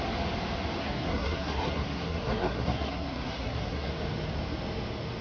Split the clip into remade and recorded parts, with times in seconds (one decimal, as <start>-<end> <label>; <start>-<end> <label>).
0.0-0.8 recorded; 0.8-3.9 remade; 3.9-5.2 recorded